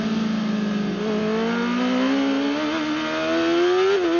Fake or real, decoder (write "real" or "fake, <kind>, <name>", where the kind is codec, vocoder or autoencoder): real